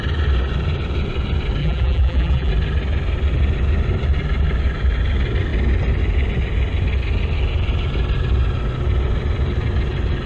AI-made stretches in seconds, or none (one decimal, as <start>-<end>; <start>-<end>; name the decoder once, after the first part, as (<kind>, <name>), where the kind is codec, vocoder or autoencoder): 1.6-2.5 (vocoder, BigVGAN v2)

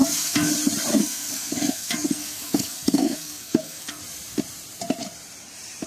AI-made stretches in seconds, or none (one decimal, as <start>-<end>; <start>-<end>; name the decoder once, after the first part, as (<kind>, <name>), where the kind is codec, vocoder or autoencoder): 0.0-0.5 (codec, SNAC); 0.9-4.0

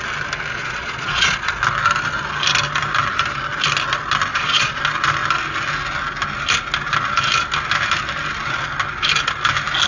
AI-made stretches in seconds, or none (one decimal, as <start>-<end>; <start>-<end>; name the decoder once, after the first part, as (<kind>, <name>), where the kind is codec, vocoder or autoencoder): 0.5-1.5 (vocoder, Vocos); 4.3-4.8

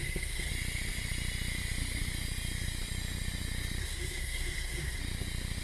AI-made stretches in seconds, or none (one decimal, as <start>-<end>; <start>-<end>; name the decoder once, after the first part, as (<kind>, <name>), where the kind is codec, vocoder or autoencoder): 0.0-0.5 (codec, SNAC); 3.8-5.0